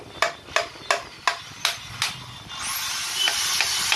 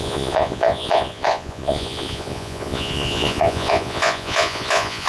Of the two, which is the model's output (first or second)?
second